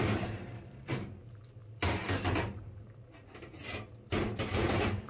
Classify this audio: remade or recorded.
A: remade